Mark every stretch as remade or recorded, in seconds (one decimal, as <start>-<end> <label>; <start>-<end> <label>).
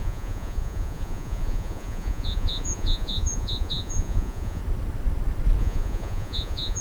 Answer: 0.0-4.6 remade; 4.6-5.6 recorded; 5.6-6.8 remade